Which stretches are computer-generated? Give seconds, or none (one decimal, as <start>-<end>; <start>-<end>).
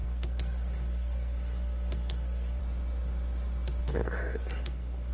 0.0-2.6; 3.8-5.1